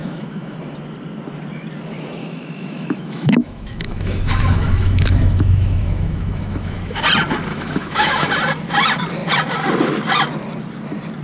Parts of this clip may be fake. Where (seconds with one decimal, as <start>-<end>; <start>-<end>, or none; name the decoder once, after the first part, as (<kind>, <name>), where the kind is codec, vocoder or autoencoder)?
0.0-0.6 (autoencoder, DAC-VAE); 2.2-7.0; 7.5-8.3